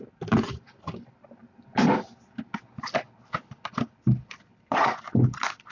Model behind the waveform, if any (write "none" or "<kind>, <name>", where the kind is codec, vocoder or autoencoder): none